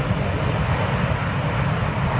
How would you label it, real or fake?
real